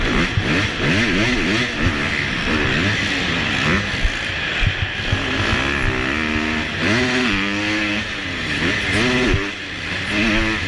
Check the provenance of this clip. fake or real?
real